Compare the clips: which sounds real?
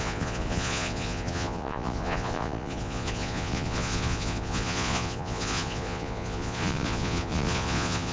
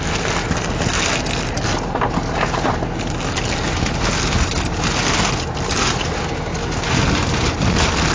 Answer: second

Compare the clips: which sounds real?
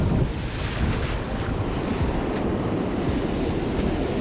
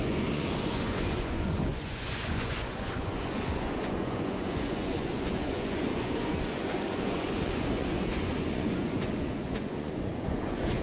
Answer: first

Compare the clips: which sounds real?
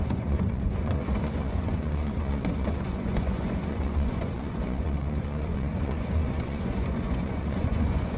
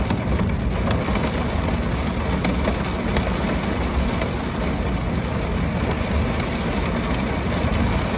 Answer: second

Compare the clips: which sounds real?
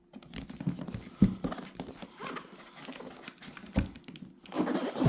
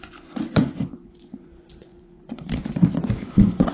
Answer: first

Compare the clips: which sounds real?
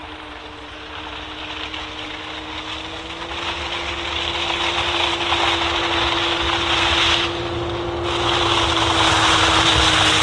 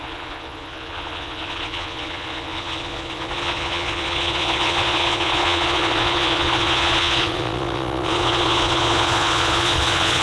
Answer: first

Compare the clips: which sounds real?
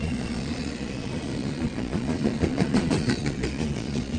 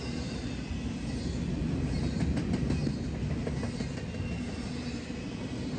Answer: second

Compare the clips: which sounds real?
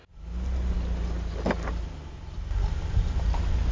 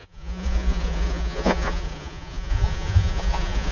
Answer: first